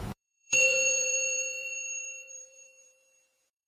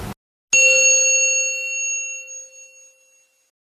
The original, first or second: second